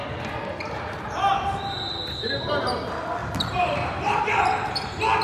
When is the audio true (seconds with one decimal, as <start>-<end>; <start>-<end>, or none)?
0.0-3.2; 4.3-5.2